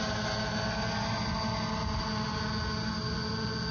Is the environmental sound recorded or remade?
recorded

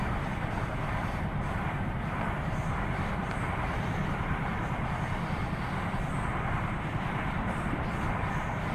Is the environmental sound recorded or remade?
remade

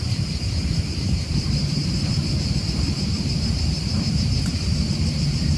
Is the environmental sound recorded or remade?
remade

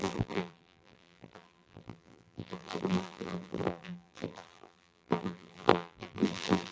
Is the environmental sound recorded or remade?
remade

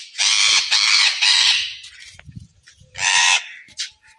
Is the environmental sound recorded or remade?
remade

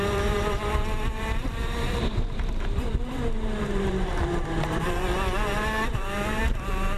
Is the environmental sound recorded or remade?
remade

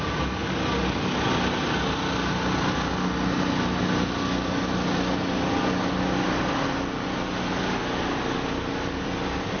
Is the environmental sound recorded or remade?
recorded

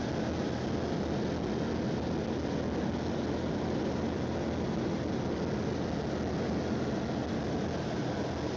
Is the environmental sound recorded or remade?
recorded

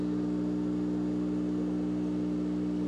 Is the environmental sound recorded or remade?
recorded